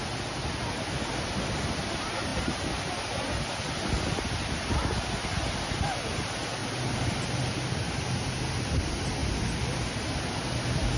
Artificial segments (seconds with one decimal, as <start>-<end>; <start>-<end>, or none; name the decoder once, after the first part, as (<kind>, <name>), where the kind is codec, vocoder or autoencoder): none